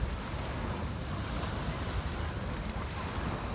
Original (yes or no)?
yes